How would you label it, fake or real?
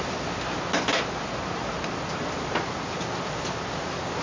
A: real